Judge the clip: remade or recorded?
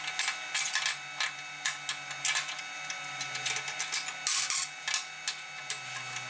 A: recorded